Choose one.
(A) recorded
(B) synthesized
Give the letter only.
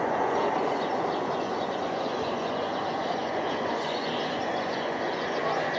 B